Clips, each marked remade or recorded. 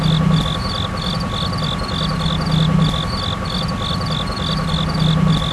recorded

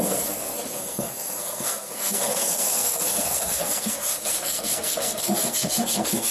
remade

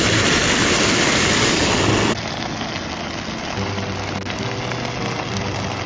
recorded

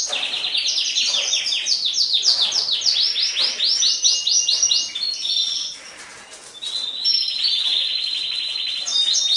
recorded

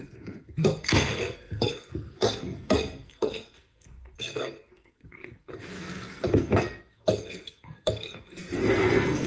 remade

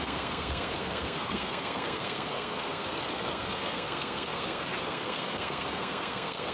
remade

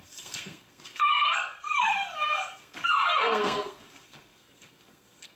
remade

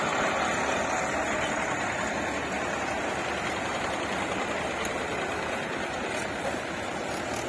recorded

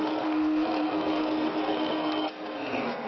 remade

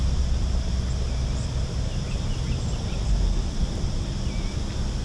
recorded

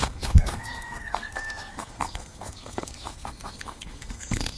remade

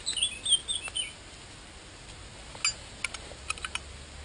recorded